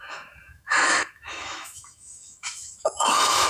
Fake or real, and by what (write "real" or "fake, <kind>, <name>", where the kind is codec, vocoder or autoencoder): fake, autoencoder, DAC-VAE